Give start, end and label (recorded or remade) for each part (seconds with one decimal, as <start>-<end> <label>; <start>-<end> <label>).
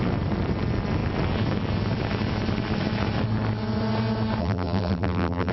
0.0-4.4 recorded; 4.4-5.5 remade